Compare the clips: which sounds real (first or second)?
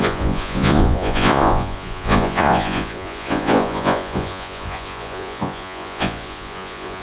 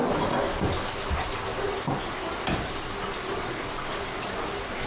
second